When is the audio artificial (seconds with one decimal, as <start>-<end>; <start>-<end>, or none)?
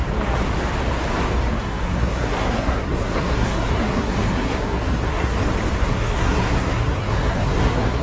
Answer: 1.6-5.3; 5.8-8.0